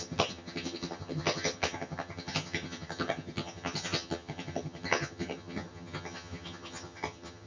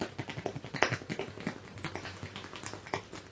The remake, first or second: first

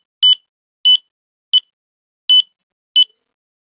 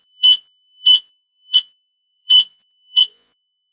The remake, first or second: second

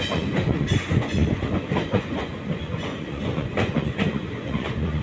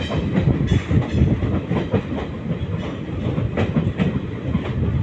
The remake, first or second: first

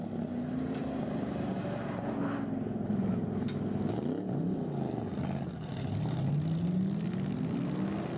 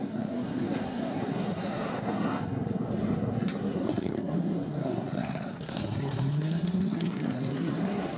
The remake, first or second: second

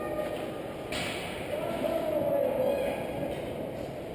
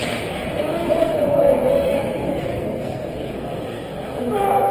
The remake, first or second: second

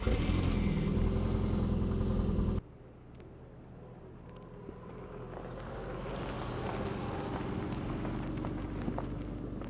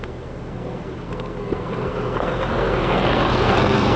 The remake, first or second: second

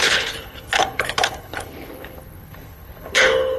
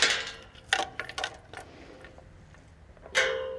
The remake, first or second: first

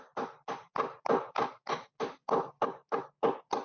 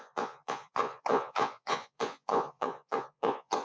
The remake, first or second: second